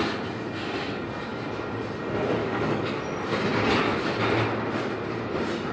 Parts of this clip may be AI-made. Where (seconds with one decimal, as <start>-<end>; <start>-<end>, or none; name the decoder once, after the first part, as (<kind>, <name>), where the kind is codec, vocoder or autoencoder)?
2.4-3.0 (codec, DAC)